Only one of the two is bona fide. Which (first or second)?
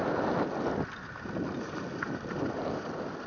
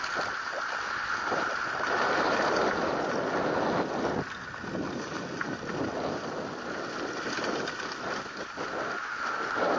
second